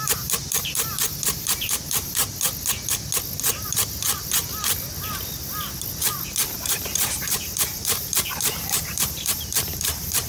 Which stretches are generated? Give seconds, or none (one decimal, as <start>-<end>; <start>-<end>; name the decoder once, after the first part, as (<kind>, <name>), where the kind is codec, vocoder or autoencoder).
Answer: 0.0-2.2 (vocoder, BigVGAN v2); 6.5-10.3